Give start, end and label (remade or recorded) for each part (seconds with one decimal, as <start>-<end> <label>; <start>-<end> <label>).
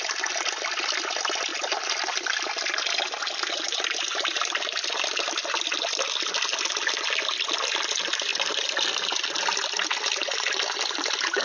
0.0-11.4 recorded